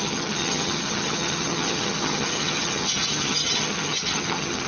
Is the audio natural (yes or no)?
no